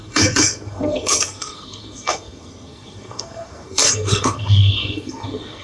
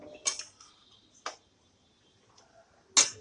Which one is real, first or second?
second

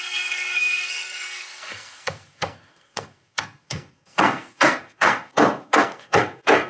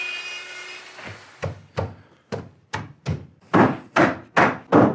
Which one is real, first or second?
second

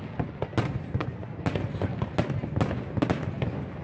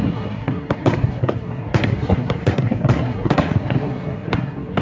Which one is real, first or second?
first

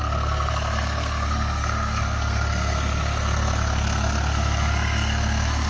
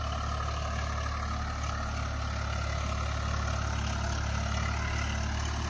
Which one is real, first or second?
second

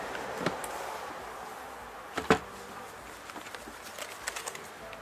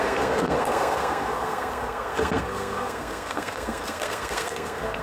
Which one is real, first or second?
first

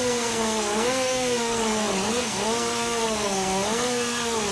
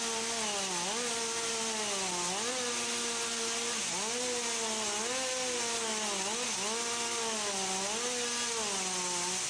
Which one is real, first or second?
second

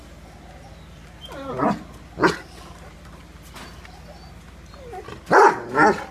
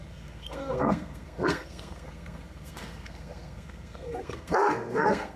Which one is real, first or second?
first